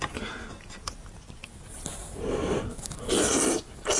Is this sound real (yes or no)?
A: yes